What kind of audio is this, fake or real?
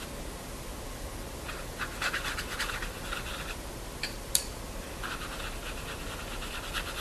real